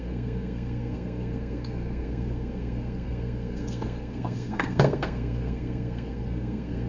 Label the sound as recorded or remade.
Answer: remade